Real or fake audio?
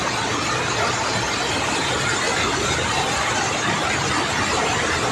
real